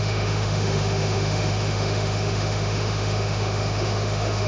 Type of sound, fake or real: fake